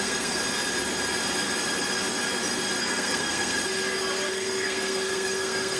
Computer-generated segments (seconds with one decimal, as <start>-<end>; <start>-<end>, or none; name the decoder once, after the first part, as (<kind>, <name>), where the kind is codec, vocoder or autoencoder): 0.0-0.4 (codec, SNAC); 2.8-3.6; 4.3-5.8